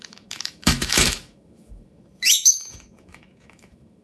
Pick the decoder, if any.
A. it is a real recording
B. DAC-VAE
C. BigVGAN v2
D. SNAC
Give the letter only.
B